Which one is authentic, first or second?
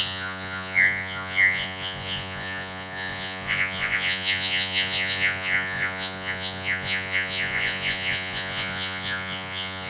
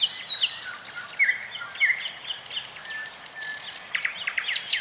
second